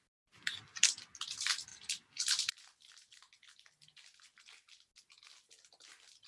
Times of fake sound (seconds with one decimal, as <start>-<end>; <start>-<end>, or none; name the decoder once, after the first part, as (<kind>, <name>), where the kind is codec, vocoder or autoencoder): none